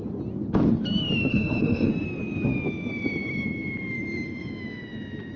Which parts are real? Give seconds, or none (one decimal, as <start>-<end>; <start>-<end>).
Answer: 0.0-1.3; 1.9-5.4